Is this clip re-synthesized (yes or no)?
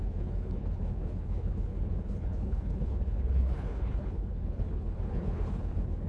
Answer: yes